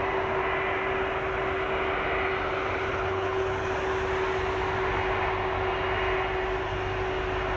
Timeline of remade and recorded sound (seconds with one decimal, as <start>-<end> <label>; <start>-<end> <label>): 0.0-2.9 recorded; 2.9-3.7 remade; 3.7-7.6 recorded